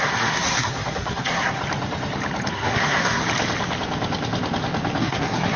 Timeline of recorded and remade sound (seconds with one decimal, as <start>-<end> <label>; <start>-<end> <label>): 0.0-1.6 remade; 1.6-2.5 recorded; 2.5-3.2 remade; 3.2-5.0 recorded; 5.0-5.6 remade